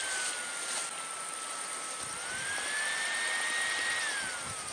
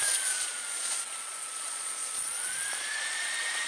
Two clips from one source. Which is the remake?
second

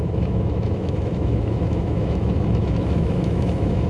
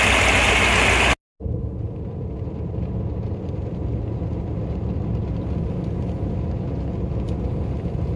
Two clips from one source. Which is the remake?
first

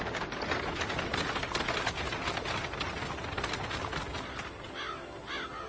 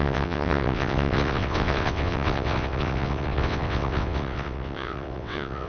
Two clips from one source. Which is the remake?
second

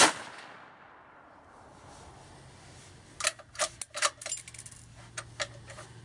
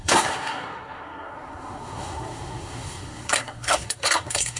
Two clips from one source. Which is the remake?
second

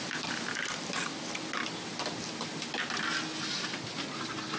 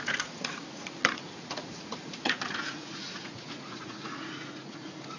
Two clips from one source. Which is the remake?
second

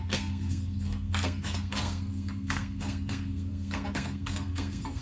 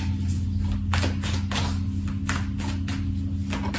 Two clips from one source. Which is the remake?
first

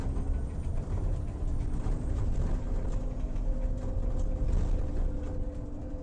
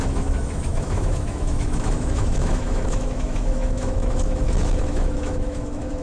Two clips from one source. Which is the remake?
second